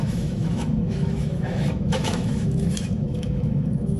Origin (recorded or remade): remade